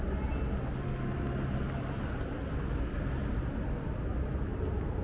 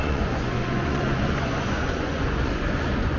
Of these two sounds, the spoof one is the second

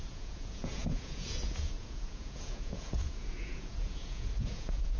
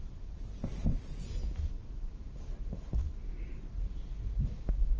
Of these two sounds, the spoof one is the first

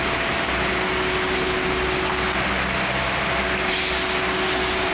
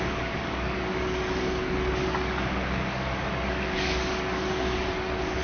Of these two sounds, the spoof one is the second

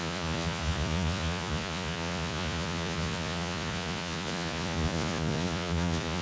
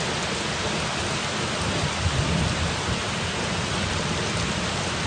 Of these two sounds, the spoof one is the first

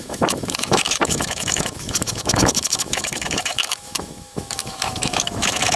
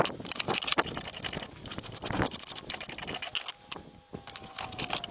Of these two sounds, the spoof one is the first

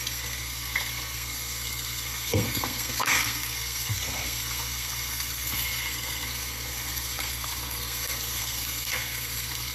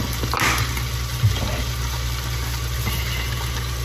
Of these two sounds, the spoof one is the first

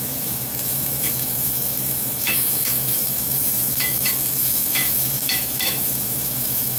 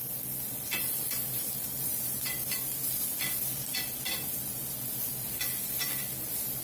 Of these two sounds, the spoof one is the first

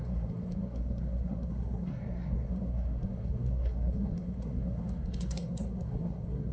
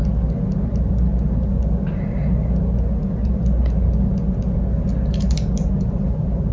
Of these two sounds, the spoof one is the first